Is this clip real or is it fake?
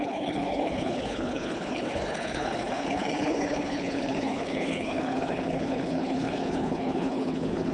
fake